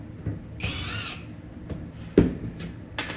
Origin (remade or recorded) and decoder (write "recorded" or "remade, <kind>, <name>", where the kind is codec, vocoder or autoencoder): recorded